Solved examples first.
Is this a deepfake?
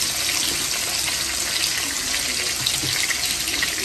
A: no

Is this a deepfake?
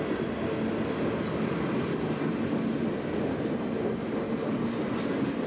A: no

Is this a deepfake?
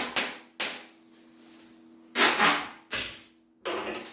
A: no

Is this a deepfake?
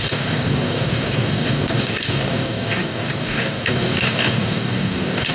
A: yes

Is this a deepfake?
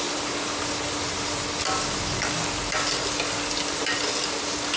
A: no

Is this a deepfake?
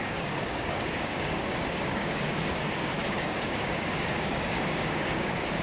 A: yes